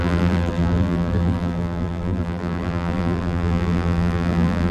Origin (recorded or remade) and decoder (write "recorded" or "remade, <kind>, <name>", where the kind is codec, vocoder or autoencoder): remade, vocoder, BigVGAN v2